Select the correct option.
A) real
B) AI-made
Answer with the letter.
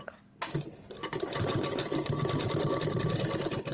A